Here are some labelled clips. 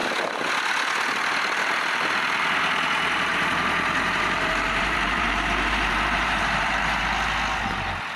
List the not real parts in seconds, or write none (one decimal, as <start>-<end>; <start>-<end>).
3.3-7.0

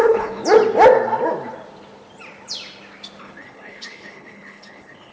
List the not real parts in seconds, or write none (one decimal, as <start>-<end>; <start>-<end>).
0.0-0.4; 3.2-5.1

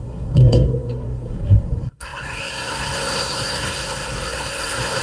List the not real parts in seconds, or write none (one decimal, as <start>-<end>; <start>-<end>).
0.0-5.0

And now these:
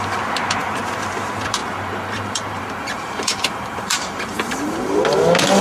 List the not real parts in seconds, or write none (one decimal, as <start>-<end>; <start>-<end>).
1.6-5.0